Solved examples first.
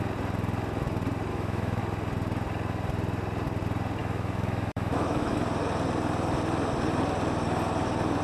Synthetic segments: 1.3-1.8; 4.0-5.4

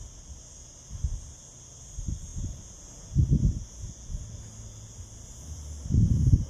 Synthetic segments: none

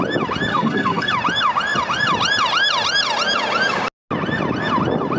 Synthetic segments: 0.5-1.1

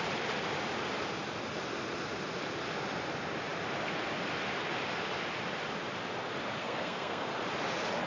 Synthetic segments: 6.6-7.3

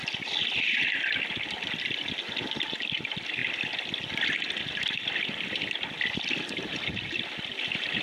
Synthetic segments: none

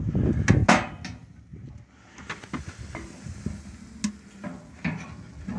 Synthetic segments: none